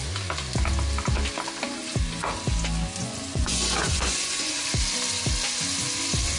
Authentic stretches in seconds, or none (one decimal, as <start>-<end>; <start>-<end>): 0.0-3.0; 4.6-6.4